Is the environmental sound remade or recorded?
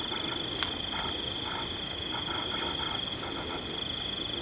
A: recorded